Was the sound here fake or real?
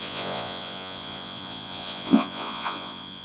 fake